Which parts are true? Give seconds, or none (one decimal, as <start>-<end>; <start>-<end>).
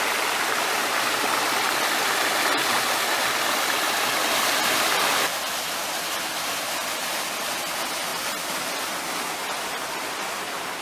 0.0-10.8